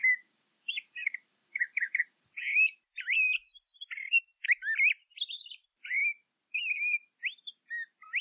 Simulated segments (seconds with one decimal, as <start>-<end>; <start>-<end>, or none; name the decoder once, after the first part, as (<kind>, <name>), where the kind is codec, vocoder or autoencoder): 0.0-2.0 (vocoder, BigVGAN v2); 2.5-4.2